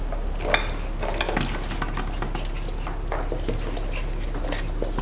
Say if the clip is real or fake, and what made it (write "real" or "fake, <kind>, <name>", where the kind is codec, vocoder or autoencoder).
real